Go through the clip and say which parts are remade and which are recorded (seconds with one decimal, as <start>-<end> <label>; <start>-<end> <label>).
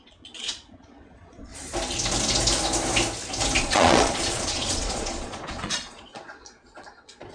0.0-1.5 remade; 1.5-3.6 recorded; 3.6-7.3 remade